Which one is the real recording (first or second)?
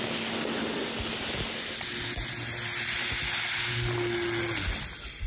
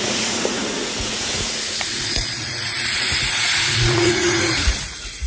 first